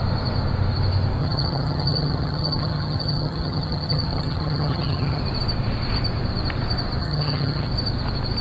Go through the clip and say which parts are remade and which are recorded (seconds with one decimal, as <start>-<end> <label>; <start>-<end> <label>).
0.0-1.2 recorded; 1.2-5.2 remade; 5.2-7.0 recorded; 7.0-7.7 remade; 7.7-8.4 recorded